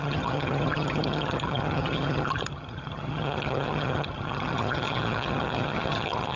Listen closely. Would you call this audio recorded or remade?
remade